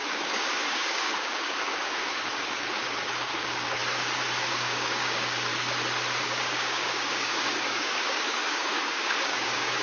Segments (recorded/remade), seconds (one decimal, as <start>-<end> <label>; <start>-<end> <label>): 0.0-3.8 remade; 3.8-4.5 recorded; 4.5-5.5 remade; 5.5-6.2 recorded; 6.2-9.8 remade